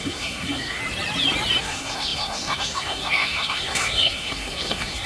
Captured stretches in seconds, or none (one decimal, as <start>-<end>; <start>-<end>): 0.8-1.6

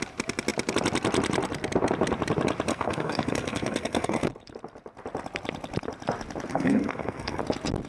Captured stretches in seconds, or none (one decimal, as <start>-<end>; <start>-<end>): 0.0-2.7; 4.3-6.5; 7.4-7.9